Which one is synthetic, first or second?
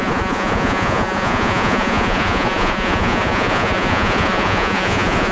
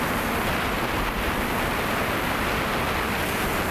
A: first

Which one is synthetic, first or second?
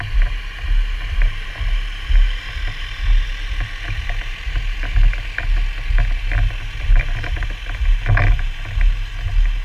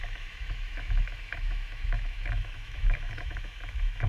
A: second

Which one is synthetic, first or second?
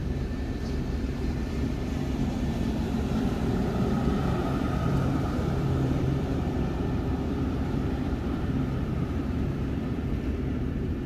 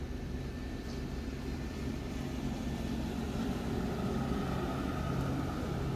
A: first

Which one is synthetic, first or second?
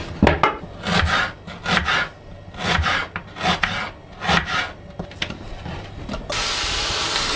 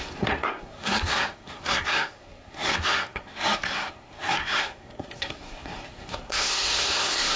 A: second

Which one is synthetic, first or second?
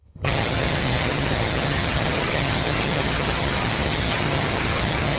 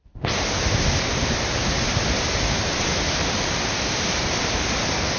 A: first